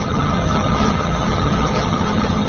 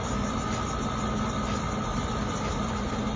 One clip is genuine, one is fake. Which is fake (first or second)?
first